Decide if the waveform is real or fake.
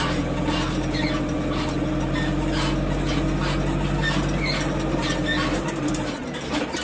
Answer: real